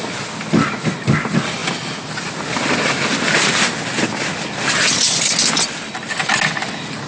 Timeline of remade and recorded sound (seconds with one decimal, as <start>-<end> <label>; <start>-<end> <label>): 0.0-7.1 recorded

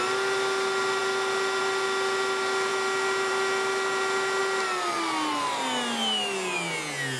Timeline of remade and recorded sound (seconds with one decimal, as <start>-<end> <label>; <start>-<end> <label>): 0.0-7.2 recorded

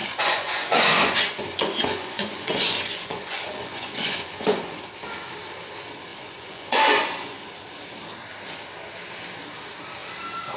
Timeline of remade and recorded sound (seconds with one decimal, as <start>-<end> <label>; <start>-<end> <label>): 0.0-4.8 remade; 4.8-6.1 recorded; 6.1-7.5 remade; 7.5-10.6 recorded

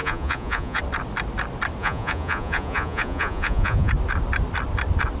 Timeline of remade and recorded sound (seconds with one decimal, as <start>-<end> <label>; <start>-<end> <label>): 0.0-0.8 remade; 0.8-1.8 recorded; 1.8-3.9 remade; 3.9-5.2 recorded

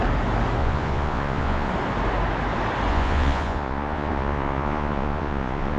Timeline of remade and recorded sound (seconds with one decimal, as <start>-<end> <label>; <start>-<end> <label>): 0.0-0.6 recorded; 0.6-1.7 remade; 1.7-2.9 recorded; 2.9-5.8 remade

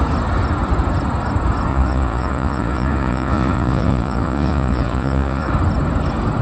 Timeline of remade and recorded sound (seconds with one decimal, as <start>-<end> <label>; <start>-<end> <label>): 0.0-1.7 recorded; 1.7-5.5 remade; 5.5-6.4 recorded